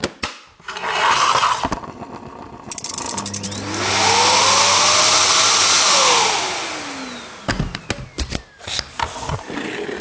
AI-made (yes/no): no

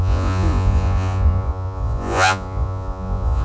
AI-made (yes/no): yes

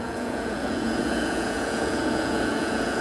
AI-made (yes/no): yes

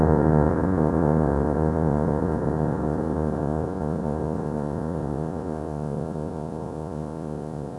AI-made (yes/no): yes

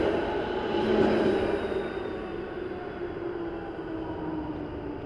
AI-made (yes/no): no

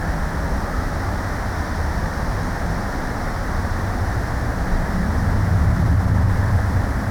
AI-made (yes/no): no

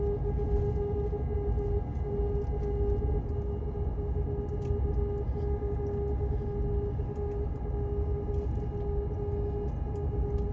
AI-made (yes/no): no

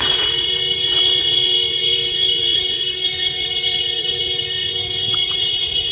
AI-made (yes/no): yes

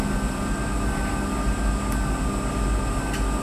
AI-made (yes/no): no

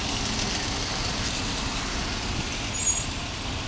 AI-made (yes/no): no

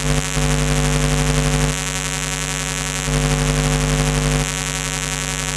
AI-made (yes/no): no